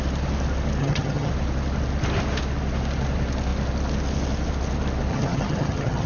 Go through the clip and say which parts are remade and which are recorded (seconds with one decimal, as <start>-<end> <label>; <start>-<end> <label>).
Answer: 0.0-0.8 recorded; 0.8-1.3 remade; 1.3-5.1 recorded; 5.1-6.1 remade